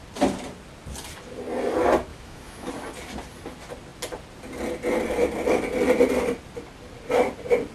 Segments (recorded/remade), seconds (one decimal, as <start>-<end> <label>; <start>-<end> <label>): 0.0-2.1 recorded; 2.1-2.7 remade; 2.7-7.7 recorded